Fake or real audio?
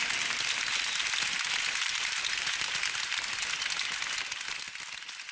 real